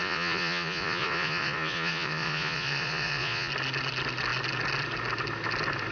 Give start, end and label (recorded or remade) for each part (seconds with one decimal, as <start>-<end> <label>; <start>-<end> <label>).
0.0-3.5 remade; 3.5-5.9 recorded